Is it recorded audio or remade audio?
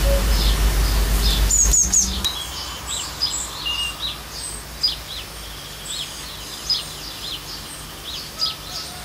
recorded